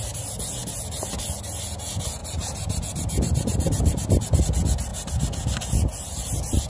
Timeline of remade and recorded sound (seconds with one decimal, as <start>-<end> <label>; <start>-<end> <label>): 0.0-2.2 recorded; 2.2-4.4 remade; 4.4-6.7 recorded